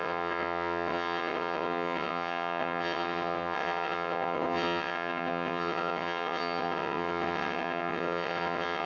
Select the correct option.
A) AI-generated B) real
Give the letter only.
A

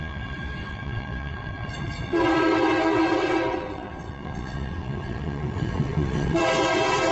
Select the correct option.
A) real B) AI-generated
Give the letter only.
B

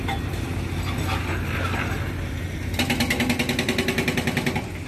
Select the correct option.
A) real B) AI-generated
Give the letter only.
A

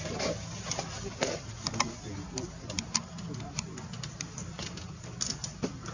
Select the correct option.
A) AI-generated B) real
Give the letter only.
B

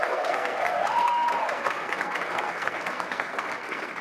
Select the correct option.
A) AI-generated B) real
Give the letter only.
A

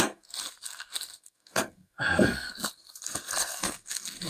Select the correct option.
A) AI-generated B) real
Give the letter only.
A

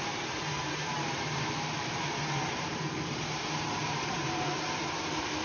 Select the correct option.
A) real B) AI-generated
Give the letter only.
B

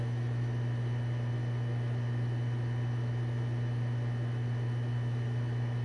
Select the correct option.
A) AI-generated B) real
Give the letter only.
B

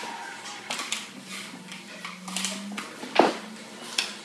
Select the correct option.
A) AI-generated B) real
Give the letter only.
B